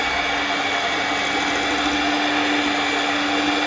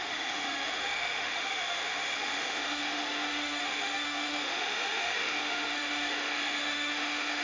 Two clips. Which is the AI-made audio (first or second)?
second